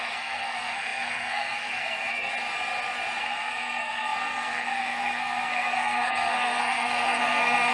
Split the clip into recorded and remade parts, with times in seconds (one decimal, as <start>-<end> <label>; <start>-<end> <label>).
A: 0.0-2.3 remade; 2.3-3.2 recorded; 3.2-7.7 remade